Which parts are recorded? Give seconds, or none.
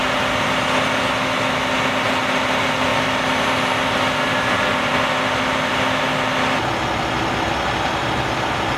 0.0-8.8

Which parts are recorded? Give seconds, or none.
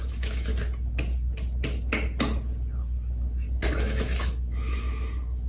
0.5-3.8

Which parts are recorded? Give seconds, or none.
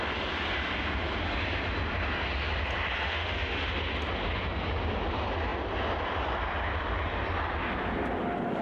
0.0-3.0; 3.7-8.6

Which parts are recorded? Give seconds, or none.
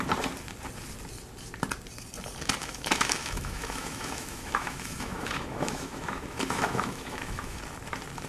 0.0-2.6; 7.6-8.3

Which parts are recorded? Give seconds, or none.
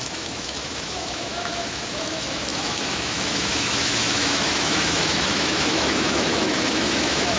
none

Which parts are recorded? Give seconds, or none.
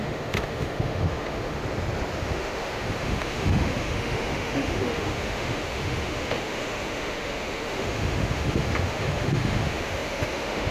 1.6-2.2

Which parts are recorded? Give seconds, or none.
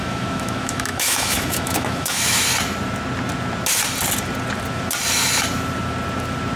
2.5-6.6